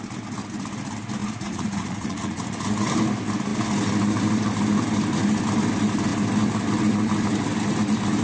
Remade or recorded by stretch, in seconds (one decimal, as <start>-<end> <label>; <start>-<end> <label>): 0.0-1.2 recorded; 1.2-2.6 remade; 2.6-8.2 recorded